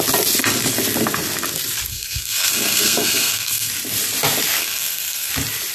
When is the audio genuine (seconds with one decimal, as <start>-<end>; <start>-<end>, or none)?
0.0-1.9; 3.7-4.6; 5.3-5.7